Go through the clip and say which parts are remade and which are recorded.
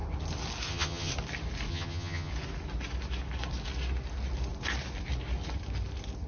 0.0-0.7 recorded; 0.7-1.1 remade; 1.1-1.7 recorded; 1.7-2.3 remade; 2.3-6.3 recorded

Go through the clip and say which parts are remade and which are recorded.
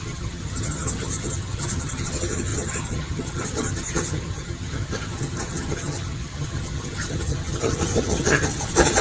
0.0-9.0 remade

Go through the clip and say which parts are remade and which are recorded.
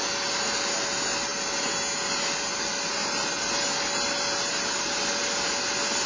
0.0-6.1 recorded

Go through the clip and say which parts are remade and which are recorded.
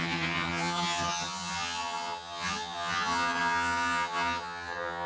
0.0-5.1 remade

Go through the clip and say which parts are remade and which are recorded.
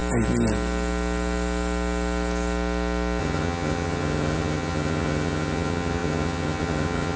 0.0-3.2 recorded; 3.2-7.2 remade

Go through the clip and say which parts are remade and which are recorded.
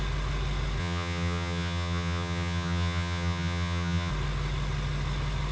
0.0-0.8 recorded; 0.8-4.1 remade; 4.1-5.5 recorded